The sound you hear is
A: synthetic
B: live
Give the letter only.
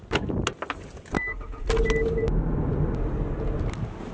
B